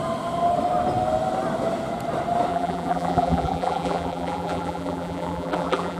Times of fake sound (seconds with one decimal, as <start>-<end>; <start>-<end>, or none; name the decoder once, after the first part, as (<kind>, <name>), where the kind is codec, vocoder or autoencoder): 2.5-6.0 (vocoder, BigVGAN v2)